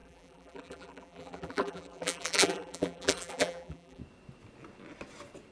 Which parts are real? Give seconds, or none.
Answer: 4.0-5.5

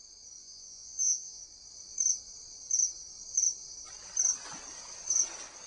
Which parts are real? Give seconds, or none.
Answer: 0.0-0.4; 1.4-5.7

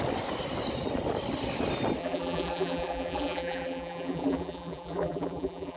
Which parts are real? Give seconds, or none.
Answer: 0.0-2.0

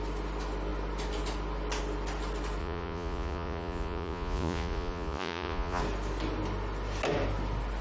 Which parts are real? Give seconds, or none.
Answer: 0.0-2.6; 5.8-7.8